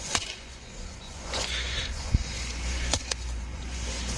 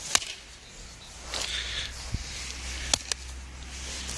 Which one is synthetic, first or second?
first